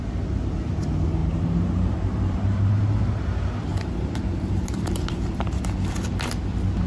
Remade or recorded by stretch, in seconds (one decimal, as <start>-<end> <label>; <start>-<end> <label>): 0.0-1.2 recorded; 1.2-2.7 remade; 2.7-3.7 recorded; 3.7-5.6 remade; 5.6-6.9 recorded

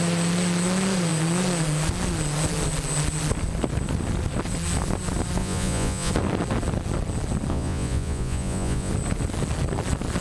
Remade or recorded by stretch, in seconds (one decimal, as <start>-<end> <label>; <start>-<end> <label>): 0.0-5.4 recorded; 5.4-6.1 remade; 6.1-7.5 recorded; 7.5-8.9 remade; 8.9-10.2 recorded

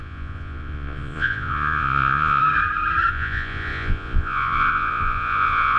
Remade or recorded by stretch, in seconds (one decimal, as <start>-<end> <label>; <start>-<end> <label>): 0.0-2.4 remade; 2.4-3.1 recorded; 3.1-5.8 remade

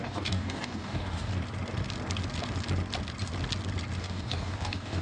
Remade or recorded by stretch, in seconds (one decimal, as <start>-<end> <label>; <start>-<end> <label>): 0.0-1.3 remade; 1.3-4.0 recorded; 4.0-5.0 remade

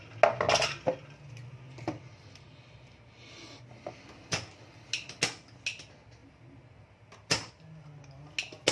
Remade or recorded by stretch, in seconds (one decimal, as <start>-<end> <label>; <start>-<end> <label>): 0.0-6.2 recorded; 6.2-7.5 remade; 7.5-8.7 recorded